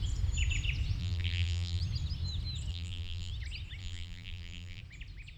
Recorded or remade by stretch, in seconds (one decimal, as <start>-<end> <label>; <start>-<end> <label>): 0.0-1.0 recorded; 1.0-1.8 remade; 1.8-2.7 recorded; 2.7-3.3 remade; 3.3-3.8 recorded; 3.8-4.8 remade; 4.8-5.4 recorded